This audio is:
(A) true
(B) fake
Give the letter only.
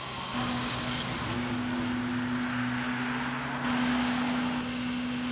A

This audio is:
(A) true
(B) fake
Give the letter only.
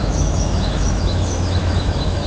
B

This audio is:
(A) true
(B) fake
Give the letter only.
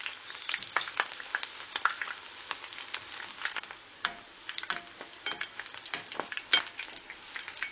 A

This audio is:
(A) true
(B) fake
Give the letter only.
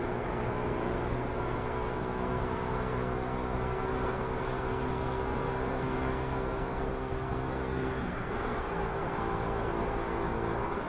B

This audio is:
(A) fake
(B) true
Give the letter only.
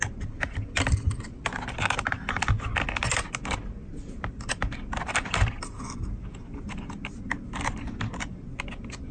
B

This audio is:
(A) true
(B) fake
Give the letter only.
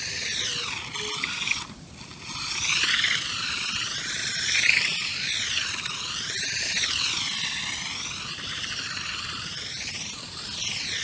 A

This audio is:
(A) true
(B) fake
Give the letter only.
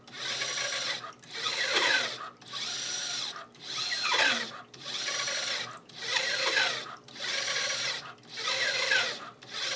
A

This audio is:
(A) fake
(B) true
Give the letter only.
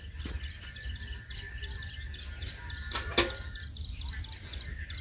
B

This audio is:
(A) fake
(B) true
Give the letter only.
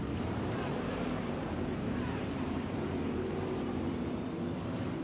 A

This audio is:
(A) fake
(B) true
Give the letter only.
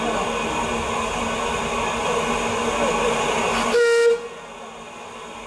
B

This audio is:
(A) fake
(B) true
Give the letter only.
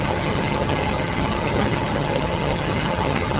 A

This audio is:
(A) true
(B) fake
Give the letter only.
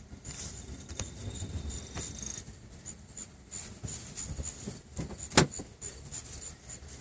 A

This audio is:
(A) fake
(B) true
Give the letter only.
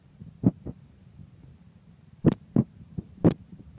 A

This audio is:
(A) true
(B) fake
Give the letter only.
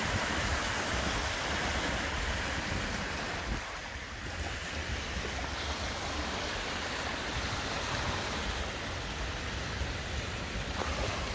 A